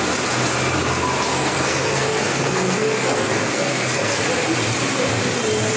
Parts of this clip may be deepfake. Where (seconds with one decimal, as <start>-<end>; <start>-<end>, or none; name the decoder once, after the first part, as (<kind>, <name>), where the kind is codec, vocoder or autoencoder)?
1.3-4.2 (codec, SNAC)

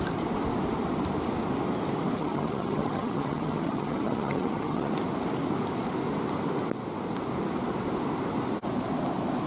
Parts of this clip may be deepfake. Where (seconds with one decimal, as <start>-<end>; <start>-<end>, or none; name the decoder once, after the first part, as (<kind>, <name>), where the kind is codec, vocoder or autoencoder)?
2.2-4.9 (vocoder, HiFi-GAN)

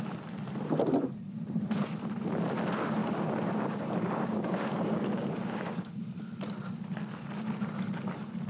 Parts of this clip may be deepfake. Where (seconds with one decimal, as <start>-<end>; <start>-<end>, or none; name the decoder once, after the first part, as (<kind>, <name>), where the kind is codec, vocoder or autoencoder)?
3.0-6.0 (codec, DAC)

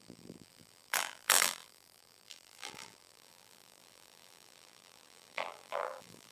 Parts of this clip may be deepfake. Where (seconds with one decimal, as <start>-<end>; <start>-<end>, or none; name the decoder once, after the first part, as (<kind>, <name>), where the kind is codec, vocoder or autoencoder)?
0.0-6.3 (vocoder, BigVGAN v2)